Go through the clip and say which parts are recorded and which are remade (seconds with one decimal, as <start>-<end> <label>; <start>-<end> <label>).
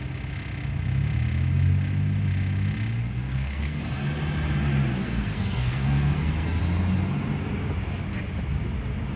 0.0-3.0 recorded; 3.0-3.8 remade; 3.8-4.9 recorded; 4.9-6.6 remade; 6.6-9.2 recorded